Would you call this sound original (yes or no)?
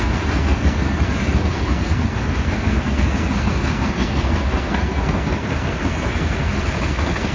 no